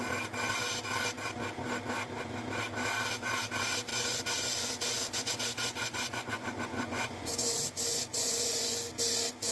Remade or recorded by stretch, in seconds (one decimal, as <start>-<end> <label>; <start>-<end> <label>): 0.0-3.9 recorded; 3.9-8.9 remade; 8.9-9.5 recorded